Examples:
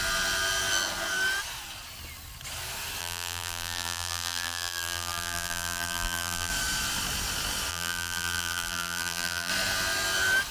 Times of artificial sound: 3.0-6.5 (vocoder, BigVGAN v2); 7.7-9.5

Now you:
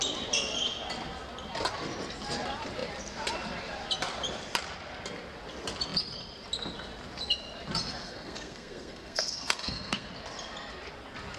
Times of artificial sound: 8.0-10.1 (codec, SNAC)

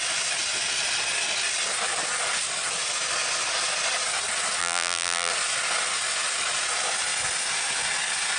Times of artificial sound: 4.6-5.3 (vocoder, BigVGAN v2)

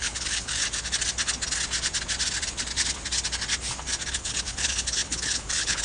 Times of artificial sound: 0.0-0.6 (codec, HILCodec); 4.1-5.8

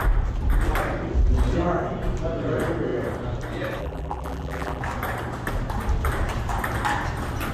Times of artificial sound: 3.8-4.8 (vocoder, BigVGAN v2)